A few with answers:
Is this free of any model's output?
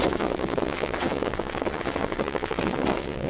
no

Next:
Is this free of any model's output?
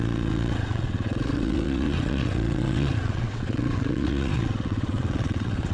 no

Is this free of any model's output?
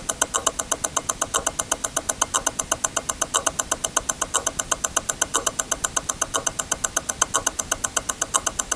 yes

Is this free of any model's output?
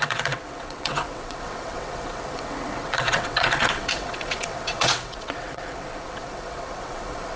no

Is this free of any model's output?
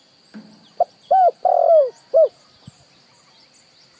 yes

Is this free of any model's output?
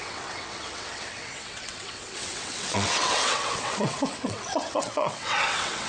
no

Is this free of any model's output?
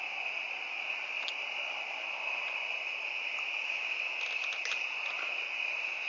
yes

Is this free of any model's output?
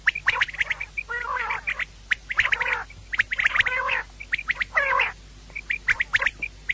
yes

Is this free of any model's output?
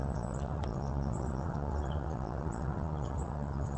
no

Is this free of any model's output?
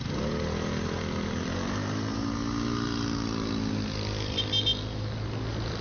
yes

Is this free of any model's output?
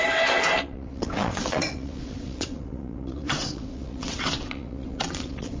no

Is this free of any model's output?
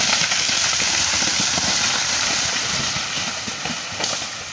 yes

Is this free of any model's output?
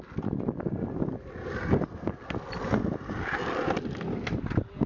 yes